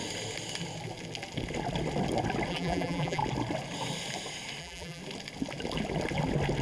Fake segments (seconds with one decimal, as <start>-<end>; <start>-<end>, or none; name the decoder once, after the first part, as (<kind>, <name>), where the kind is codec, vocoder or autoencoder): 2.5-3.2 (vocoder, BigVGAN v2); 4.6-5.0